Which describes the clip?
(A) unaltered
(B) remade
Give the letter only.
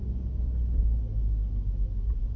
A